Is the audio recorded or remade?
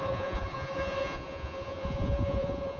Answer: remade